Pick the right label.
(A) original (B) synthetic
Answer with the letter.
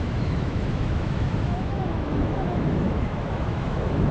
B